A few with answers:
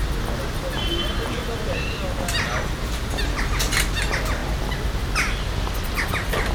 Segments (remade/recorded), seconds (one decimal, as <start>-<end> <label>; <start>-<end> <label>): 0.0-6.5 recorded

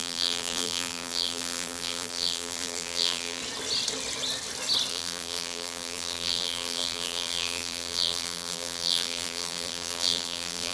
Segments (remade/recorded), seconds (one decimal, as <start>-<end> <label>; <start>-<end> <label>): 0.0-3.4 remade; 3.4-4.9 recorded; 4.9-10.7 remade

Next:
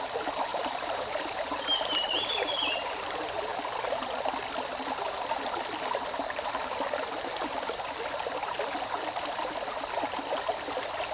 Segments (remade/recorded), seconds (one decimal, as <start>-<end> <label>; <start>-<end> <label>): 0.0-0.5 recorded; 0.5-2.3 remade; 2.3-11.1 recorded